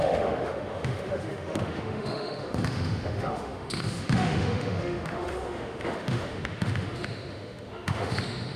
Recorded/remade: remade